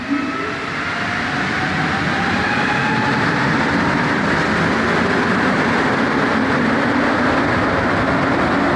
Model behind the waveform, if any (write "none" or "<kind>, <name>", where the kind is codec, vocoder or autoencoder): none